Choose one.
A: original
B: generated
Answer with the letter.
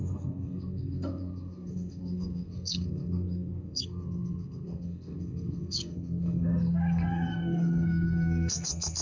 B